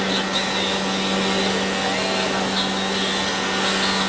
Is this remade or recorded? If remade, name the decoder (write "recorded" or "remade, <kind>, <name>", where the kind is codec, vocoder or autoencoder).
recorded